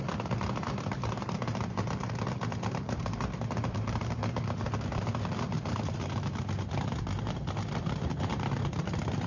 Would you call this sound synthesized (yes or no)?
yes